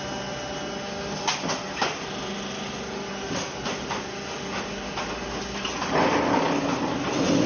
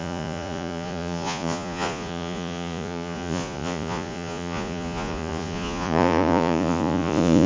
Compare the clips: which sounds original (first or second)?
first